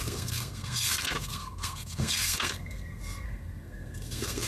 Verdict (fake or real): fake